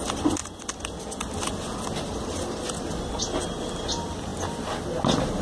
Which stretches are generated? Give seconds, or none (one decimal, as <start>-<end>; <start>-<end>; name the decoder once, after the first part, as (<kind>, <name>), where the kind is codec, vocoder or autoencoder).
none